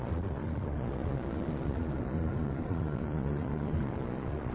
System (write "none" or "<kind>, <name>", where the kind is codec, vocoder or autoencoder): vocoder, Vocos